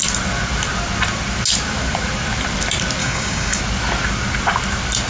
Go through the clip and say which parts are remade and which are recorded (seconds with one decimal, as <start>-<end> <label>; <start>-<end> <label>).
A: 0.0-3.0 recorded; 3.0-3.6 remade; 3.6-5.1 recorded

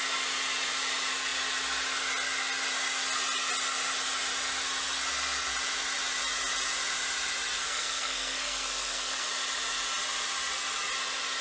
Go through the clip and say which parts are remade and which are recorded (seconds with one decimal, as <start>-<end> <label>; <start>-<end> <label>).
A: 0.0-7.6 recorded; 7.6-9.3 remade; 9.3-11.4 recorded

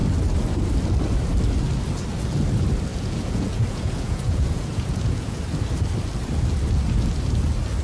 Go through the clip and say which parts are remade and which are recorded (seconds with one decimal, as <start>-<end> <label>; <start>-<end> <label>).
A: 0.0-2.9 recorded; 2.9-5.4 remade; 5.4-7.8 recorded